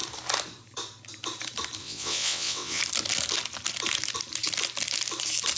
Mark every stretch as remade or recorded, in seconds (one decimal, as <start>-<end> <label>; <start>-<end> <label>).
0.0-1.8 recorded; 1.8-2.8 remade; 2.8-5.6 recorded